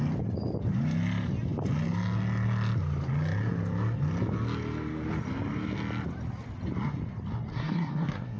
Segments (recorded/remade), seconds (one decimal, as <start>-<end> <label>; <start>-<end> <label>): 0.0-7.5 recorded; 7.5-8.4 remade